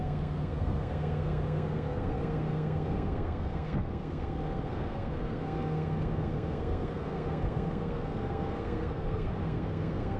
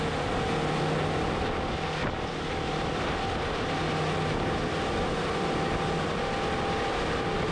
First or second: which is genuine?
second